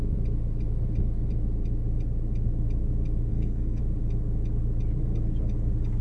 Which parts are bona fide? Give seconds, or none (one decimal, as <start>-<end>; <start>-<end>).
0.0-3.3; 3.8-6.0